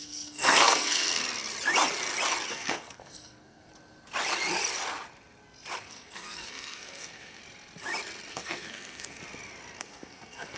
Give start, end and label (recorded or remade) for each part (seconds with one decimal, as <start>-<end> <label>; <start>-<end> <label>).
0.0-1.2 remade; 1.2-2.5 recorded; 2.5-3.7 remade; 3.7-5.8 recorded; 5.8-7.4 remade; 7.4-8.3 recorded; 8.3-9.2 remade; 9.2-9.8 recorded; 9.8-10.6 remade